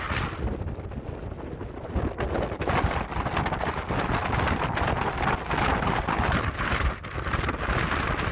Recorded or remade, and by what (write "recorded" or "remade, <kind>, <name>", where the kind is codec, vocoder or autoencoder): recorded